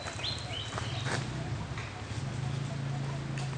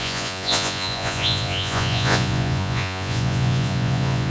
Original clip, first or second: first